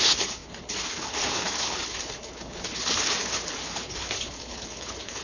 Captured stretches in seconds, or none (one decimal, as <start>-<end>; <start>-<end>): none